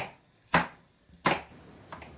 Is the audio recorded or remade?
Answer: recorded